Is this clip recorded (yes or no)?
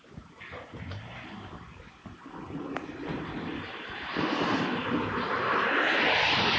yes